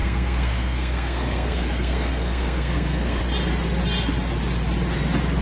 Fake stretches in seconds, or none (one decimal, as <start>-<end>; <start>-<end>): 0.0-3.2